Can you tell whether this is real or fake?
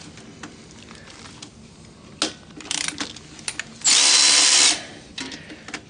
real